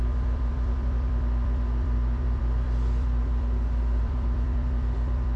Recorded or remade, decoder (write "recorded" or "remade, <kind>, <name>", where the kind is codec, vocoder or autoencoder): remade, vocoder, BigVGAN v2